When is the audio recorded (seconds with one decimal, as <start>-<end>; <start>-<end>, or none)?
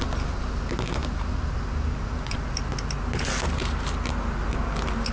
0.0-5.1